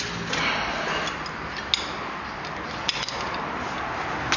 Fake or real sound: real